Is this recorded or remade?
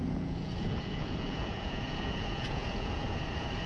remade